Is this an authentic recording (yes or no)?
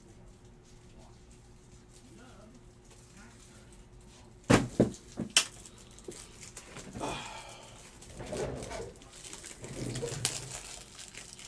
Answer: yes